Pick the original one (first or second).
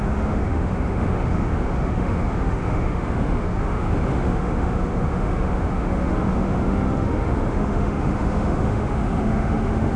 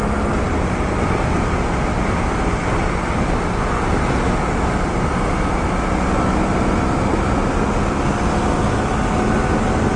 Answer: second